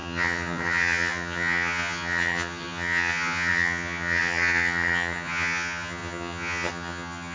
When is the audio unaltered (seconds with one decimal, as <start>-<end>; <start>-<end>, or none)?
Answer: none